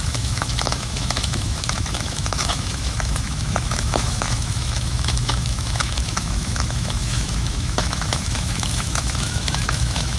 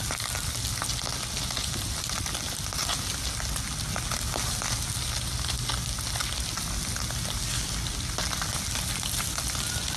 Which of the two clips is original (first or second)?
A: second